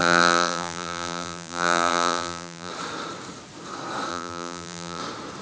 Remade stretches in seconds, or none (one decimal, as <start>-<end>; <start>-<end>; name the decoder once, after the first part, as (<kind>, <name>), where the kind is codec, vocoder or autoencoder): 0.0-2.7 (vocoder, BigVGAN v2); 4.1-5.0